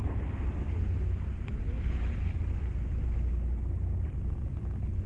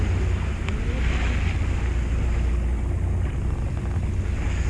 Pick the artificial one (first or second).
first